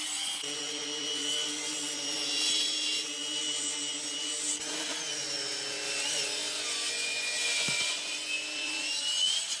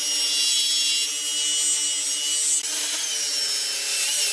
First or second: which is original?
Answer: second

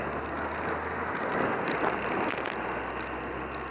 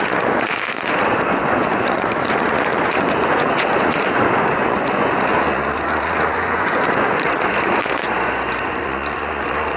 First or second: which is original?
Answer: first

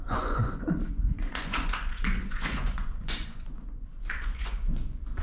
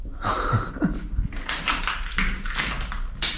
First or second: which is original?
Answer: second